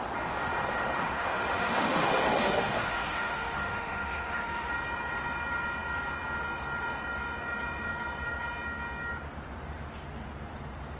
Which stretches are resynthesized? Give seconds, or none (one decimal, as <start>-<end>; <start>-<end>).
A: 1.0-4.7